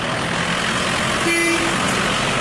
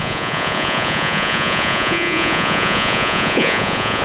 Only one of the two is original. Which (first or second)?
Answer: first